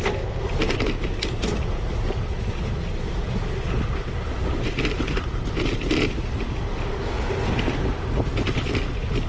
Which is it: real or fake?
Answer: real